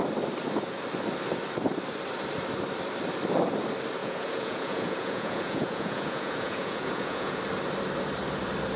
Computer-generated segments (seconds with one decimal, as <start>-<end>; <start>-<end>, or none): 4.0-7.4